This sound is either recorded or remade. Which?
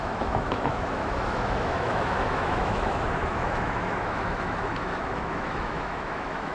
remade